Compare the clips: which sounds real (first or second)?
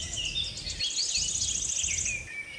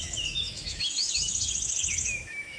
first